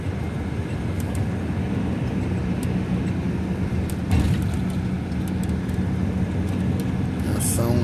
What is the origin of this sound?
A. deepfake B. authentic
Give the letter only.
B